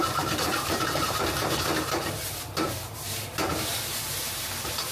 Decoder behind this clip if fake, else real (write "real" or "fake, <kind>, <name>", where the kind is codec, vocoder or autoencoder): fake, vocoder, BigVGAN v2